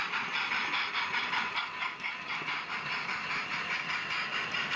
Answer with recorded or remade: recorded